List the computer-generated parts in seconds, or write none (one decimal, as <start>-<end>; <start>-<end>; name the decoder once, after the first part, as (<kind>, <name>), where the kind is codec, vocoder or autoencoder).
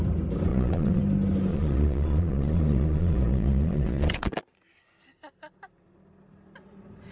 0.5-1.0 (vocoder, Vocos); 1.5-4.4